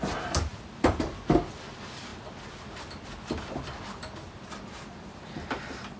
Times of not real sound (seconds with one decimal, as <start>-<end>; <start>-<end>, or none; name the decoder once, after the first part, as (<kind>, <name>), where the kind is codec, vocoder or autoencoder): none